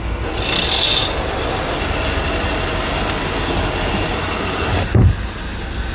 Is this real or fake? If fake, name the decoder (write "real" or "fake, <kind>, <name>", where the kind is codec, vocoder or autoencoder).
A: real